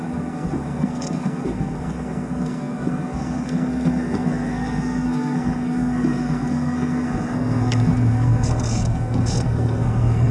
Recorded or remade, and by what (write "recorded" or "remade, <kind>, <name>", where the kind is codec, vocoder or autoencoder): remade, codec, SNAC